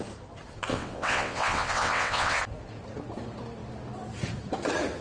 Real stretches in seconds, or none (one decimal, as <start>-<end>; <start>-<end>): 0.0-0.7; 2.4-5.0